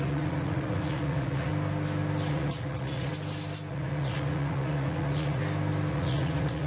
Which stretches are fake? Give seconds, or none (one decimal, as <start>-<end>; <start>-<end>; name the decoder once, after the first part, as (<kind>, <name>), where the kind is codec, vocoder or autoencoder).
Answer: 0.0-1.5 (vocoder, Vocos); 2.3-3.1; 3.7-5.4; 5.9-6.7